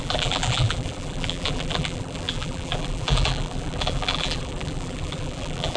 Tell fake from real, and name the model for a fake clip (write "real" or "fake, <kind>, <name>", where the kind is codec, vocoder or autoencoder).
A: fake, vocoder, BigVGAN v2